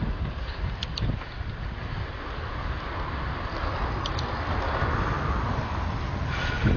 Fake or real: real